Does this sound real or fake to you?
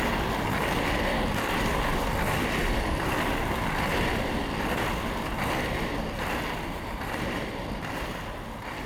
real